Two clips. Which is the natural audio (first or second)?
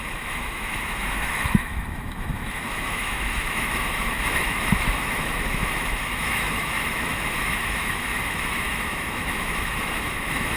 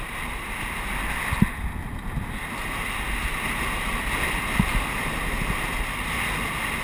second